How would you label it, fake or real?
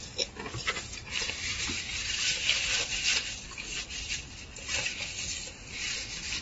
real